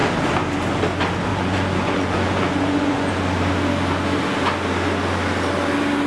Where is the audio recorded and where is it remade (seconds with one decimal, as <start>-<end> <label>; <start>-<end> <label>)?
0.0-1.3 recorded; 1.3-3.1 remade; 3.1-6.1 recorded